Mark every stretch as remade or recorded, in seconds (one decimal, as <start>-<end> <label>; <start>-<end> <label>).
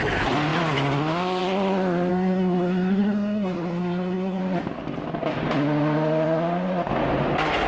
0.0-2.1 recorded; 2.1-4.4 remade; 4.4-7.7 recorded